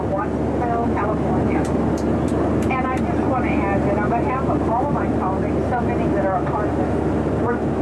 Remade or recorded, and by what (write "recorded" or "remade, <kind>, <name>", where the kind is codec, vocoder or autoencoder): recorded